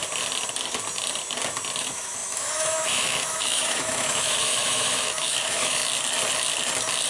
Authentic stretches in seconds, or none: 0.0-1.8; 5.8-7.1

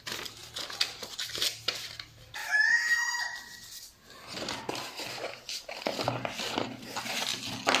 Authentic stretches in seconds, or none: 0.0-2.4; 3.2-7.8